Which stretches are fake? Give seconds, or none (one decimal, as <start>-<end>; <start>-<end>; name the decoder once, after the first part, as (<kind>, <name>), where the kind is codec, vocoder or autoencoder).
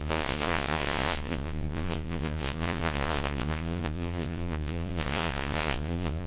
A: 0.0-6.3 (vocoder, Vocos)